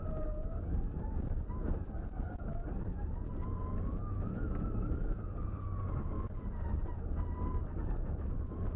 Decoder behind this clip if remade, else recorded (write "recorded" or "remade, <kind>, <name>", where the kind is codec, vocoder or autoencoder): recorded